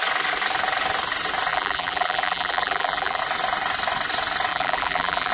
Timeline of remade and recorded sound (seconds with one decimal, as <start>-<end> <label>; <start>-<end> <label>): 0.0-1.5 recorded; 1.5-3.2 remade; 3.2-4.5 recorded; 4.5-5.3 remade